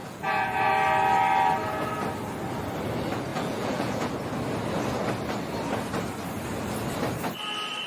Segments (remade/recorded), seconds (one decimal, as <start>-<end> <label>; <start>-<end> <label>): 0.0-0.7 remade; 0.7-3.3 recorded; 3.3-4.1 remade; 4.1-7.9 recorded